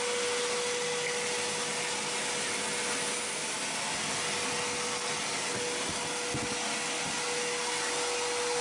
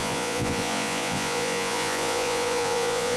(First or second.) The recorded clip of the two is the first